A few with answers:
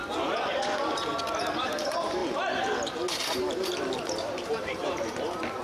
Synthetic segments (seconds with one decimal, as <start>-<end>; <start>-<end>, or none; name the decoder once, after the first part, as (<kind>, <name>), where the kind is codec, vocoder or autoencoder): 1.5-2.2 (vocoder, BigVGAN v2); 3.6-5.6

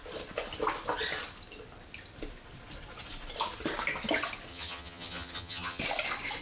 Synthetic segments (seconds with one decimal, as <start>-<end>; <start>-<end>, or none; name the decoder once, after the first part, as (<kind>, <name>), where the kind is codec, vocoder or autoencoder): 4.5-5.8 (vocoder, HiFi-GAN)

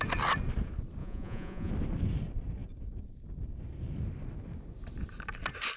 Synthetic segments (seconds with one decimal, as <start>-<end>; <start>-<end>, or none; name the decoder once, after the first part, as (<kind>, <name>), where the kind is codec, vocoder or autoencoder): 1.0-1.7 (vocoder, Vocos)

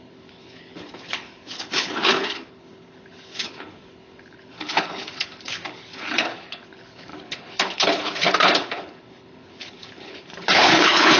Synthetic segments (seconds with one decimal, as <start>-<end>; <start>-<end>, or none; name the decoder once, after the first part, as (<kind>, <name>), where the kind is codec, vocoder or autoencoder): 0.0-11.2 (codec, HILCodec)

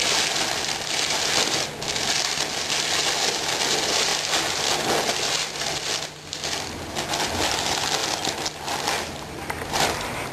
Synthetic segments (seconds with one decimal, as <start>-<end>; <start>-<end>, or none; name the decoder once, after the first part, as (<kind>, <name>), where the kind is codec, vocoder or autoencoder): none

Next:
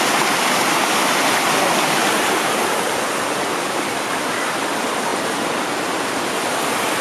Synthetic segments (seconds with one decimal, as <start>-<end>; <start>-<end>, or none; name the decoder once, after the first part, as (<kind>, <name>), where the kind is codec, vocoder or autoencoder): none

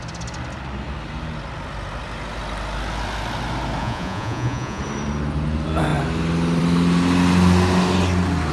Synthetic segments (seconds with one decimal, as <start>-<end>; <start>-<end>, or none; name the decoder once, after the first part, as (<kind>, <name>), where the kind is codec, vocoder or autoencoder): 3.8-4.8 (vocoder, Vocos)

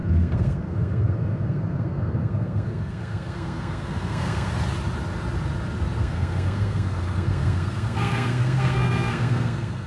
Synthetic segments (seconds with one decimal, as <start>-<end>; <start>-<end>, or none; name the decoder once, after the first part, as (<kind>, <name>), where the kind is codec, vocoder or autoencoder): 0.0-4.5 (codec, SNAC); 6.0-9.9